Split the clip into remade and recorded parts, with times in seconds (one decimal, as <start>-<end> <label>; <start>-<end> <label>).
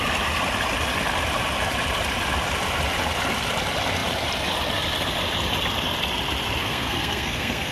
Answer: 0.0-6.6 recorded; 6.6-7.7 remade